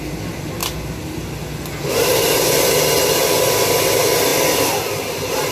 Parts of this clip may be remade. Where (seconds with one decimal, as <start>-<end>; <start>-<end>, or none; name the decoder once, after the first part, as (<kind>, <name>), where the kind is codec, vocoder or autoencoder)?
none